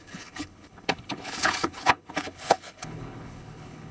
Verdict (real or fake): fake